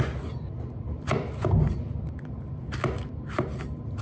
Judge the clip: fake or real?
real